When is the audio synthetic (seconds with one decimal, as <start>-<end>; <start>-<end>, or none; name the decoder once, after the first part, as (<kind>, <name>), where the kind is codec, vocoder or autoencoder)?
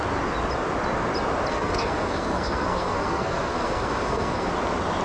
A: 1.5-4.5 (codec, SNAC)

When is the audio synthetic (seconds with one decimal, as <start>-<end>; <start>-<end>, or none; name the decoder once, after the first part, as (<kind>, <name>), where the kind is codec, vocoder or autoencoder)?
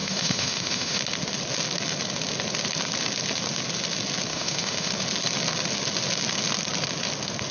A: 0.0-1.0 (autoencoder, DAC-VAE); 4.3-4.9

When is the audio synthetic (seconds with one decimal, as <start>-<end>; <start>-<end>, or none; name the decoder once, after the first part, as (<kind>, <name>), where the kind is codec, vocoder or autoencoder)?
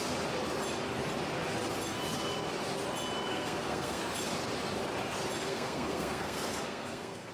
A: 3.3-4.0 (codec, SNAC); 5.4-7.3